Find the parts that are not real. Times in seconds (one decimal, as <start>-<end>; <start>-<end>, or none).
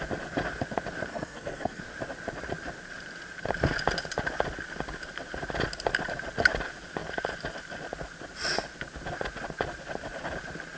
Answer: 1.1-1.8